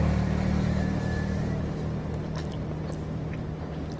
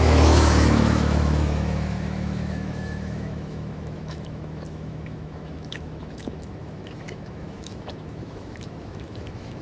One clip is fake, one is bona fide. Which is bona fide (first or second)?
first